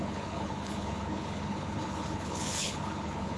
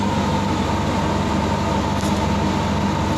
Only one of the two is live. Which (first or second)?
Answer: second